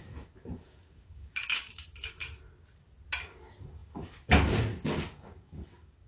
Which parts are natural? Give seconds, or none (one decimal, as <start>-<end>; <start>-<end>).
2.2-3.2